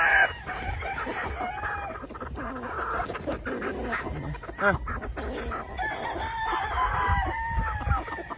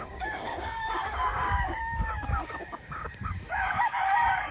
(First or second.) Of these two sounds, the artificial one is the second